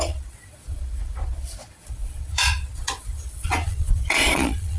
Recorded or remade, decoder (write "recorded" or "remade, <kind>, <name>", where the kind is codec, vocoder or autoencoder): remade, vocoder, Vocos